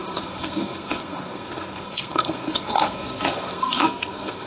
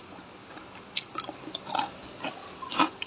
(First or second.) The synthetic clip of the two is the first